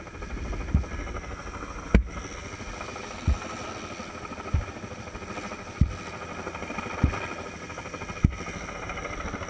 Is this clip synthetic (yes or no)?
no